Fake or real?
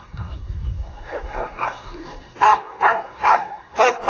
fake